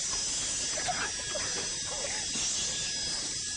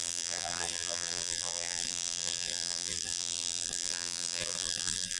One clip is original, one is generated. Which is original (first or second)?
first